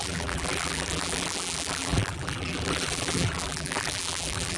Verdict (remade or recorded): remade